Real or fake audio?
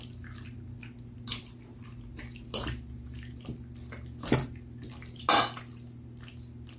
real